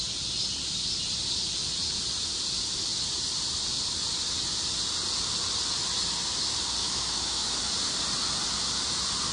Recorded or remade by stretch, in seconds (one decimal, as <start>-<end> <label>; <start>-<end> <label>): 0.0-6.8 recorded; 6.8-7.6 remade; 7.6-9.3 recorded